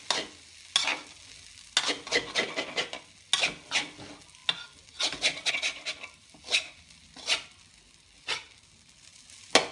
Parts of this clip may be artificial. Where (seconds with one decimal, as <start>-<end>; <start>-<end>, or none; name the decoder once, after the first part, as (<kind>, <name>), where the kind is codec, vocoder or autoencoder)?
none